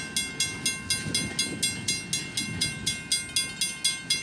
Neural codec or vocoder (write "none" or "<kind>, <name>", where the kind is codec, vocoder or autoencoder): none